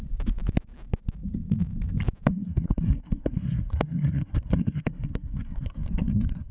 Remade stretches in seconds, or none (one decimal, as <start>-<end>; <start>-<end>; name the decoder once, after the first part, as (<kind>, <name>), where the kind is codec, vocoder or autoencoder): 2.3-6.5 (codec, SNAC)